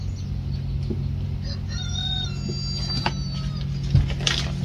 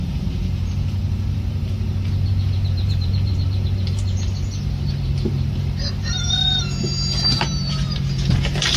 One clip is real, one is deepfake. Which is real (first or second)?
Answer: first